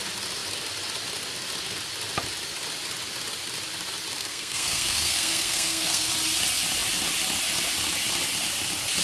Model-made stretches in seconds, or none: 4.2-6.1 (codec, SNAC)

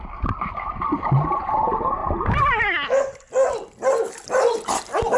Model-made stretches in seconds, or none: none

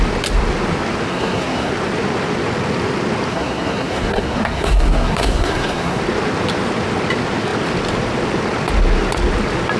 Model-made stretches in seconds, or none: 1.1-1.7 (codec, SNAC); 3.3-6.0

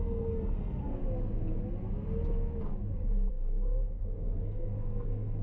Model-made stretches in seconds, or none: 0.0-1.0 (codec, SNAC); 3.3-5.4

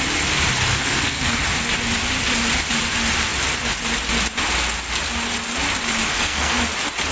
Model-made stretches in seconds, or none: 0.7-1.4 (codec, SNAC); 6.1-6.6